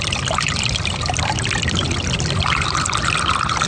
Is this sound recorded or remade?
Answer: recorded